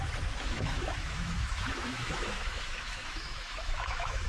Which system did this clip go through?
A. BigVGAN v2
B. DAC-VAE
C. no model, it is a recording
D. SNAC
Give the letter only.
B